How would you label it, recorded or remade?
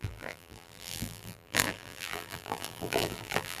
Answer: remade